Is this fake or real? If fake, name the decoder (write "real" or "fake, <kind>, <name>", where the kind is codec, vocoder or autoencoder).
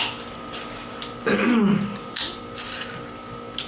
real